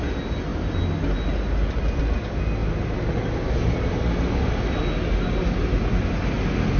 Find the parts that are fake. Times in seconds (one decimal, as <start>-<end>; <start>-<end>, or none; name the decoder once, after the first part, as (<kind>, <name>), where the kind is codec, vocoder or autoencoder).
none